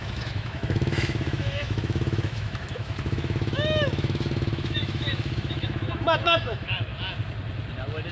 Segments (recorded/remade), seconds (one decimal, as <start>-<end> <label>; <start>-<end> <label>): 0.0-6.9 remade; 6.9-8.1 recorded